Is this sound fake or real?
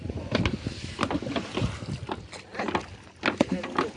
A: real